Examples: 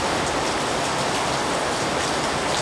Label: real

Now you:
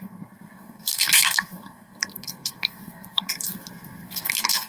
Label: fake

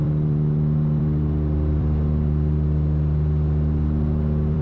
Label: fake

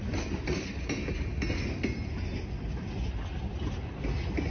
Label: real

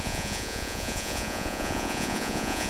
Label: fake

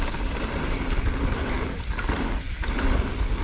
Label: real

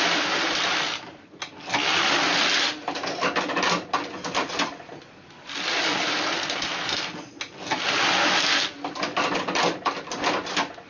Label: real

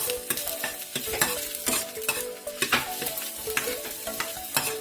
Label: real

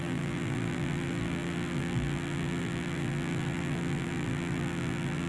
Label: fake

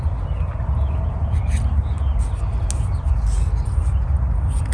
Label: real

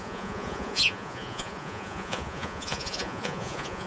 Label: fake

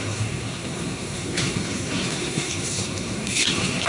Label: fake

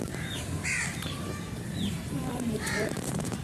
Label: fake